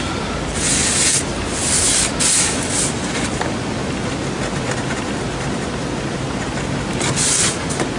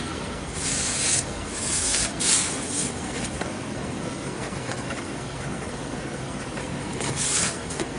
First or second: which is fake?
second